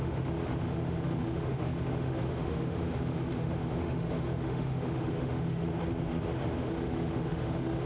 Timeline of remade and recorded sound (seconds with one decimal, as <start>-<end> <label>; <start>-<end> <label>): 0.0-5.7 remade; 5.7-6.6 recorded; 6.6-7.9 remade